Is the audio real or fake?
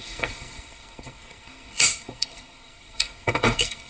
fake